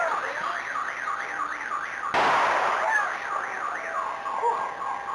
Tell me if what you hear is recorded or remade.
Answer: recorded